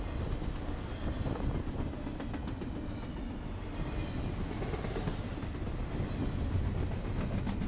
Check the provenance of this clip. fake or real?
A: real